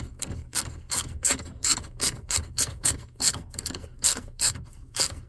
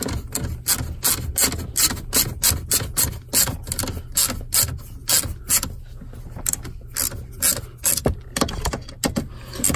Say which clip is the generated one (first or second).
first